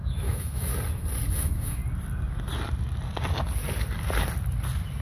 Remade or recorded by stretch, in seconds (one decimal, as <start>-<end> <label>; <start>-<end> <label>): 0.0-0.7 remade; 0.7-1.3 recorded; 1.3-1.8 remade; 1.8-5.0 recorded